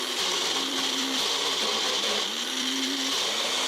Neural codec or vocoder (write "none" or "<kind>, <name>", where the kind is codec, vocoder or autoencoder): vocoder, BigVGAN v2